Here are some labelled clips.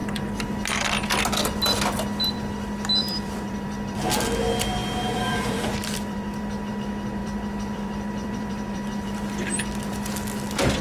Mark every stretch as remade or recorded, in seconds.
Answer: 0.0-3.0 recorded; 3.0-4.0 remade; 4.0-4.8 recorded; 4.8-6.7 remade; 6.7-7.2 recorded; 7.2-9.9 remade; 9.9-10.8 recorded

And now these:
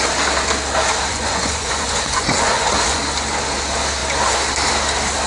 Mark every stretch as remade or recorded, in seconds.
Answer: 0.0-1.1 recorded; 1.1-3.0 remade; 3.0-5.3 recorded

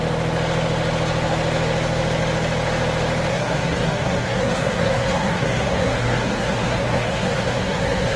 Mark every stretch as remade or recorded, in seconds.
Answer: 0.0-3.3 recorded; 3.3-8.2 remade

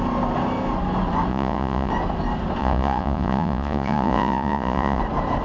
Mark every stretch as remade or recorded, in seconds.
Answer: 0.0-1.3 recorded; 1.3-1.9 remade; 1.9-2.6 recorded; 2.6-5.0 remade; 5.0-5.4 recorded

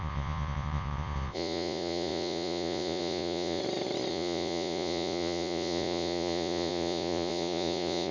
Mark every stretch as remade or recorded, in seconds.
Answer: 0.0-3.6 remade; 3.6-4.1 recorded; 4.1-8.1 remade